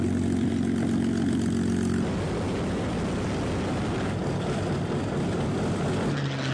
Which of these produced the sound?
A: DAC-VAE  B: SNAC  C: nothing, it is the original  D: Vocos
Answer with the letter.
C